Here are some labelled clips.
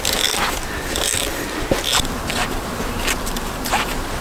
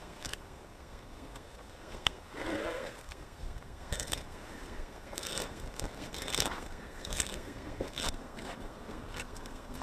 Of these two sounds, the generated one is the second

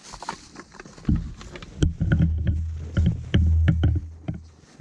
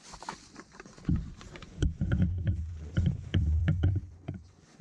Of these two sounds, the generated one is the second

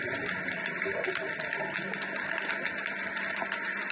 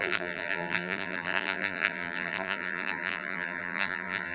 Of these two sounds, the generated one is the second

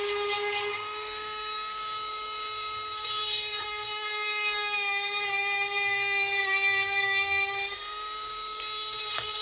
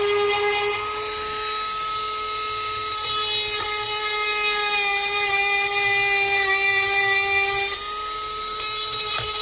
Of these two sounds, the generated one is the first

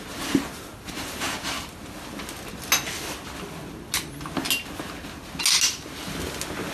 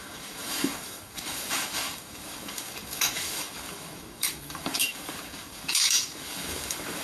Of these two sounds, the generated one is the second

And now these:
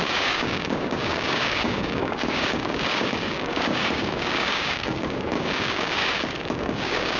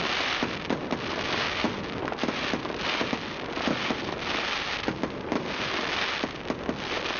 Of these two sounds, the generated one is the first